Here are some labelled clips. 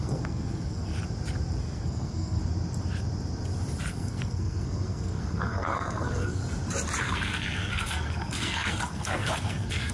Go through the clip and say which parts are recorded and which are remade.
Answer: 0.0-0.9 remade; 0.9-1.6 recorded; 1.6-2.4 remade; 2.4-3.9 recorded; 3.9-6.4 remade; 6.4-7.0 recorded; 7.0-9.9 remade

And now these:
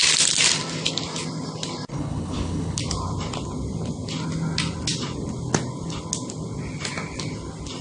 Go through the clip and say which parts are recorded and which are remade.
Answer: 0.0-1.9 recorded; 1.9-2.8 remade; 2.8-7.8 recorded

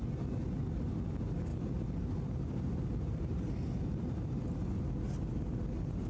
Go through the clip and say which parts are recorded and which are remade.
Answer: 0.0-1.5 recorded; 1.5-4.8 remade; 4.8-6.1 recorded

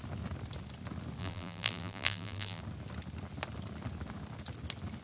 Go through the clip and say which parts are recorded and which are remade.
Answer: 0.0-1.2 recorded; 1.2-2.6 remade; 2.6-5.0 recorded